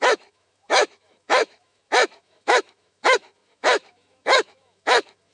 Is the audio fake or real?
fake